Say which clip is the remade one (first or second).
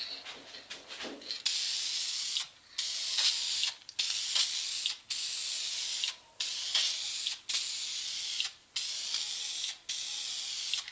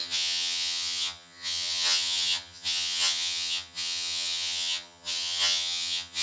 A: second